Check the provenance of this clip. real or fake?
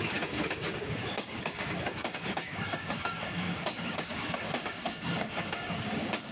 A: fake